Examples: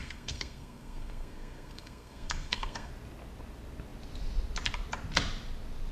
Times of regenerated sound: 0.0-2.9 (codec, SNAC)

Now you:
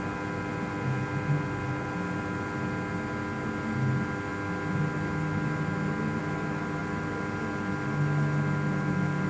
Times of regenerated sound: none

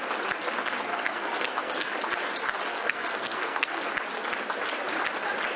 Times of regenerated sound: 0.9-1.9 (codec, SNAC); 2.7-3.8

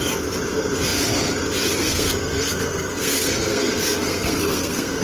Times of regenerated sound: 1.8-5.0 (codec, SNAC)

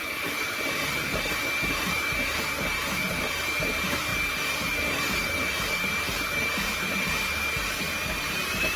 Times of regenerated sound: 0.0-8.8 (vocoder, BigVGAN v2)

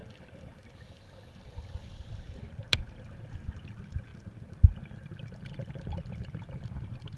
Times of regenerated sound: none

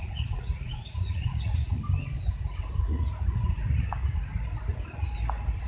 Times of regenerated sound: 0.0-1.8 (vocoder, Vocos); 2.8-4.3